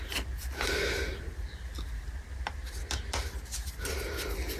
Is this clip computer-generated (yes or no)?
no